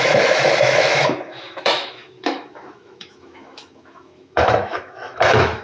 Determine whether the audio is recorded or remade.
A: remade